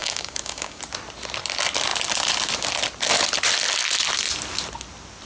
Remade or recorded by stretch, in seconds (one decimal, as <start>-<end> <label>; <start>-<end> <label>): 0.0-0.8 remade; 0.8-5.3 recorded